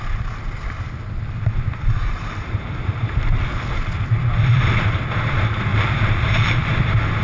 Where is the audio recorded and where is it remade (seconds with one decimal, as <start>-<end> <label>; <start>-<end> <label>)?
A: 0.0-2.0 recorded; 2.0-3.6 remade; 3.6-5.7 recorded; 5.7-6.7 remade; 6.7-7.2 recorded